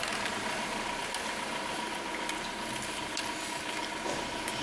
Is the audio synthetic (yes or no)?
no